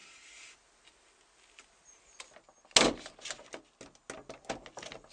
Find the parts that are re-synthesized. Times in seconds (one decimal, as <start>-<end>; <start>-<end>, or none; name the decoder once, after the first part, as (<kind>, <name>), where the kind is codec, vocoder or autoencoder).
none